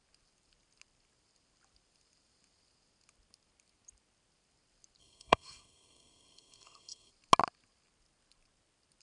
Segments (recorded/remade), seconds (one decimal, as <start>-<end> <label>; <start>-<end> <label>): 0.0-5.0 recorded; 5.0-7.1 remade; 7.1-9.0 recorded

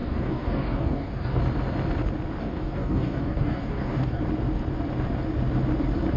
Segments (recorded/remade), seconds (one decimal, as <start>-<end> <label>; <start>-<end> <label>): 0.0-1.4 remade; 1.4-2.4 recorded; 2.4-4.2 remade; 4.2-6.2 recorded

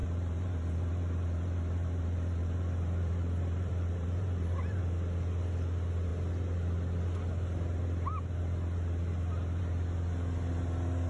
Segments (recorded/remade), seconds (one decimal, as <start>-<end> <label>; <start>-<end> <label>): 0.0-4.8 remade; 4.8-11.1 recorded

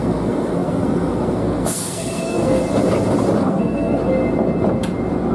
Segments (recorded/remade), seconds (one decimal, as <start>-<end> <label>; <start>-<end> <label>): 0.0-2.6 remade; 2.6-3.4 recorded; 3.4-4.0 remade; 4.0-5.3 recorded

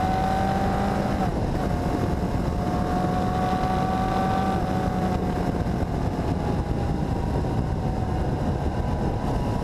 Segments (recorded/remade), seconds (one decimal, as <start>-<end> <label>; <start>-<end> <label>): 0.0-9.6 recorded

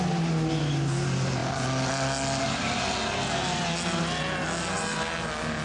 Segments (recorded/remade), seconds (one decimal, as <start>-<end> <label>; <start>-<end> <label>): 0.0-5.6 recorded

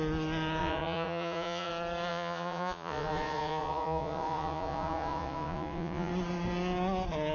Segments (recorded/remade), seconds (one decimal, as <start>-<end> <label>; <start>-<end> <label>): 0.0-0.6 recorded; 0.6-1.7 remade; 1.7-2.1 recorded; 2.1-6.1 remade; 6.1-7.3 recorded